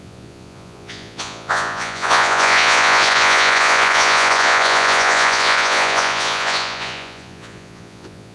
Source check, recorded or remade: remade